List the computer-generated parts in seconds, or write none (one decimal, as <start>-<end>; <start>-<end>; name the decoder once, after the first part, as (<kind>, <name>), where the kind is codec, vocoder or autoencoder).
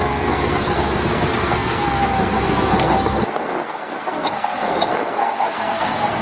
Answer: 0.0-6.2 (codec, SNAC)